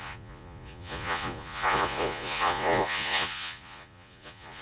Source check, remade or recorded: remade